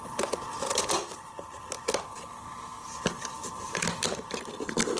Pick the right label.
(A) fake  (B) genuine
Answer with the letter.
B